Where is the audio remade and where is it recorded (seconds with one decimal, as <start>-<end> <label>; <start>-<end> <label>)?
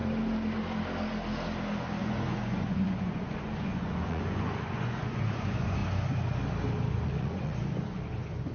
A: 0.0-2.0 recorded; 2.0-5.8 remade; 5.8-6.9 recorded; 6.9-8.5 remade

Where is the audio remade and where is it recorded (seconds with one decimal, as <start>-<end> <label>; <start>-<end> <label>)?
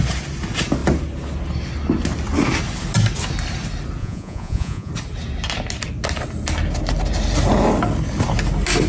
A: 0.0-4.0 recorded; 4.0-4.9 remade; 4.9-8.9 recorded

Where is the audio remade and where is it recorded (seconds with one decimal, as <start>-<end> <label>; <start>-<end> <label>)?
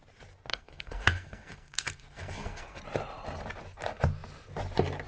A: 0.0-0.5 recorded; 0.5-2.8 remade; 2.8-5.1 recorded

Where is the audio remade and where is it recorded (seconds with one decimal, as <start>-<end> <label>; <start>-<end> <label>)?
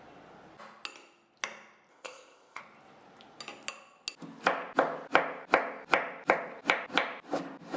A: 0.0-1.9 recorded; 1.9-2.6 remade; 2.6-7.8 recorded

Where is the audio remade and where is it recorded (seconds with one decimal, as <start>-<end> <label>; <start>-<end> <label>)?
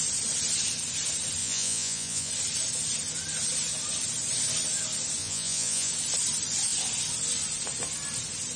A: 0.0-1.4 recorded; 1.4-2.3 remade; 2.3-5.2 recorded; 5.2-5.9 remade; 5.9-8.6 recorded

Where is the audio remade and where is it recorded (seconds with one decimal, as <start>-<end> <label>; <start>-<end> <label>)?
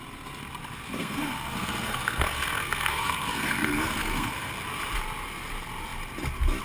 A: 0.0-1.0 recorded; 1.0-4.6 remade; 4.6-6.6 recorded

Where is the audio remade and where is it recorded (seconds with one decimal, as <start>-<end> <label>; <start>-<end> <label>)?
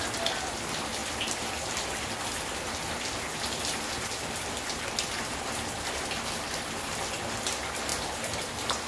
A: 0.0-8.9 recorded